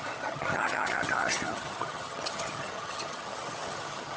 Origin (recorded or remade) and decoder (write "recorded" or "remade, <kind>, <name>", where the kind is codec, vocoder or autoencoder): remade, vocoder, HiFi-GAN